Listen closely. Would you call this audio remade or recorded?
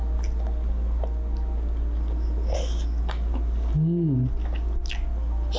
recorded